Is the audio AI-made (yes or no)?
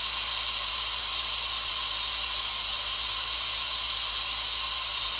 no